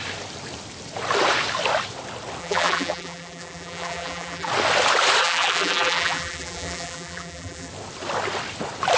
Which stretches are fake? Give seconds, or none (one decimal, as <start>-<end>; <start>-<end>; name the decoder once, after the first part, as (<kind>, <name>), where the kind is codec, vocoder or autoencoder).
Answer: 2.4-4.5 (vocoder, BigVGAN v2); 5.2-7.7